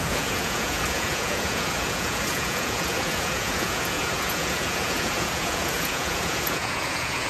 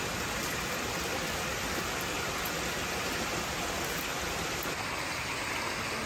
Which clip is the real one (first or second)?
second